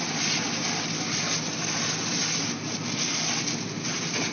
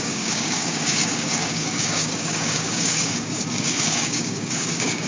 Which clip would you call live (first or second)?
first